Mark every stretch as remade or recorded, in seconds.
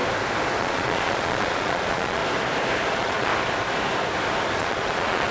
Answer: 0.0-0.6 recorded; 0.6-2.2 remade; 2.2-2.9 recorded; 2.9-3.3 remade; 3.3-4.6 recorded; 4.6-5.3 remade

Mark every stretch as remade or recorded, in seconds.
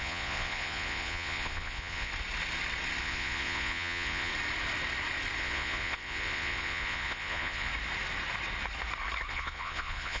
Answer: 0.0-2.1 remade; 2.1-3.0 recorded; 3.0-4.3 remade; 4.3-5.4 recorded; 5.4-7.7 remade; 7.7-9.3 recorded; 9.3-10.2 remade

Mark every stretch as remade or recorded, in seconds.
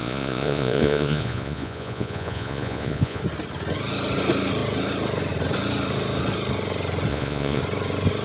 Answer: 0.0-3.2 remade; 3.2-7.1 recorded; 7.1-7.6 remade; 7.6-8.2 recorded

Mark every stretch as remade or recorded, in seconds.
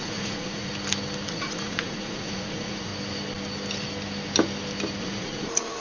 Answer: 0.0-0.7 remade; 0.7-1.3 recorded; 1.3-2.9 remade; 2.9-5.0 recorded; 5.0-5.8 remade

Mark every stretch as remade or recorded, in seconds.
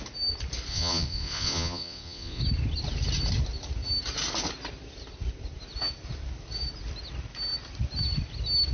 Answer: 0.0-0.7 recorded; 0.7-2.4 remade; 2.4-8.7 recorded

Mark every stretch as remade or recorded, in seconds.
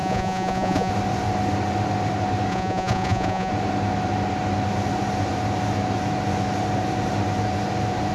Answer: 0.0-0.9 remade; 0.9-2.5 recorded; 2.5-3.5 remade; 3.5-8.1 recorded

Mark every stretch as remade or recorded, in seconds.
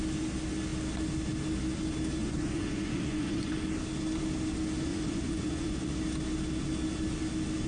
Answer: 0.0-2.2 recorded; 2.2-3.5 remade; 3.5-4.9 recorded; 4.9-5.9 remade; 5.9-7.7 recorded